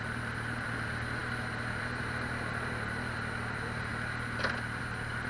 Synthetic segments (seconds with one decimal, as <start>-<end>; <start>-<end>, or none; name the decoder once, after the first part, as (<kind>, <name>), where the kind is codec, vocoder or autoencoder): none